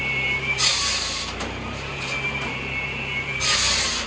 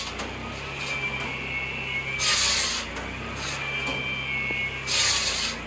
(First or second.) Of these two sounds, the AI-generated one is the first